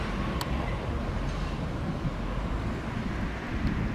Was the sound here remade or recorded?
recorded